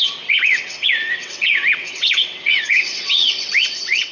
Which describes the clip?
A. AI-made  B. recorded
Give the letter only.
A